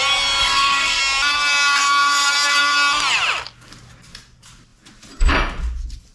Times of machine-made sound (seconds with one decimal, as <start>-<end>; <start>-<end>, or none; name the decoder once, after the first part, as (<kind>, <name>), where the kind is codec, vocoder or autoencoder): 0.4-1.0 (codec, SNAC)